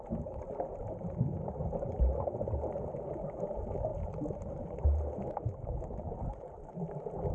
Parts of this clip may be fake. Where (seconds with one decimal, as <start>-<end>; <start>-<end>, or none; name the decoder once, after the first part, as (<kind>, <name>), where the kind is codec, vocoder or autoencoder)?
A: 3.9-4.8 (vocoder, BigVGAN v2)